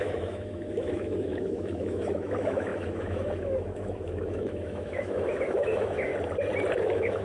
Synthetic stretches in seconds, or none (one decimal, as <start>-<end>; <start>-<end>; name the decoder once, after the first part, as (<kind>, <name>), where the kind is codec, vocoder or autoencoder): 0.0-6.1 (autoencoder, DAC-VAE); 6.8-7.2